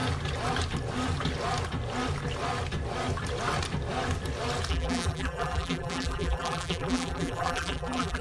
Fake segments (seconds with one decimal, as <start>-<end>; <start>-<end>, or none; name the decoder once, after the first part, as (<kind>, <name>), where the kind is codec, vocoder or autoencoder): 4.7-8.2 (vocoder, BigVGAN v2)